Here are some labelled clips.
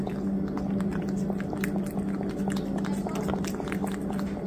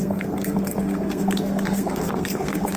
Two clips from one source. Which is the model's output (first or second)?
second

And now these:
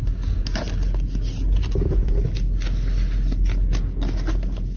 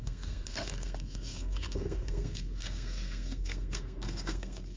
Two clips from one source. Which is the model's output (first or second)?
second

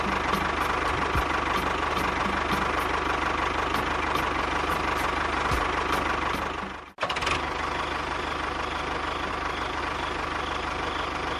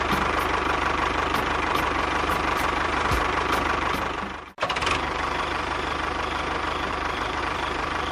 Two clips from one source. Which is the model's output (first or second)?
second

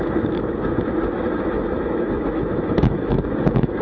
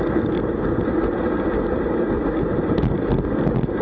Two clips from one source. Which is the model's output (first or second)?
first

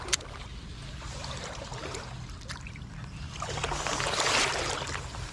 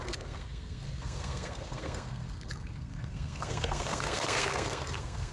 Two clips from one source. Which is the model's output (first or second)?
second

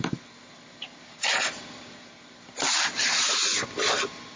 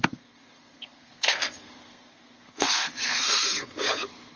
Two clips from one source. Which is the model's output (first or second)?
second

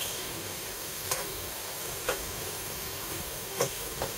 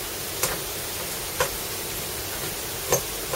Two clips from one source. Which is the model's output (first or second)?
first